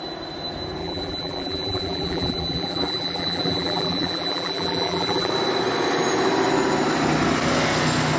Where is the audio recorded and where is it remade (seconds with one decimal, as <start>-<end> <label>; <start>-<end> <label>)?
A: 0.0-0.8 recorded; 0.8-5.3 remade; 5.3-8.2 recorded